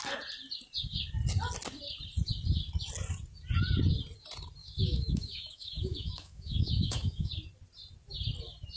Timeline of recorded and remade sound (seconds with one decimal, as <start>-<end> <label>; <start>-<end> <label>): 0.0-4.6 recorded; 4.6-7.3 remade; 7.3-8.8 recorded